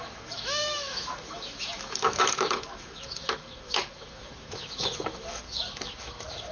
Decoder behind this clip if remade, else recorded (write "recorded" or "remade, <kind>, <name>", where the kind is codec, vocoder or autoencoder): remade, autoencoder, DAC-VAE